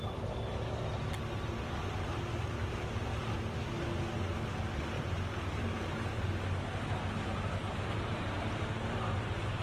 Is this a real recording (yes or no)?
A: yes